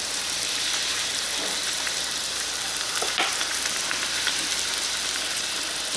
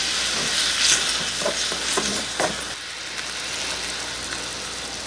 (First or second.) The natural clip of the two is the second